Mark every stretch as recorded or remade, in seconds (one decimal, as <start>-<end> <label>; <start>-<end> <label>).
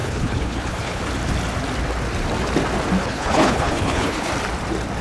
0.0-1.0 remade; 1.0-3.0 recorded; 3.0-4.3 remade; 4.3-5.0 recorded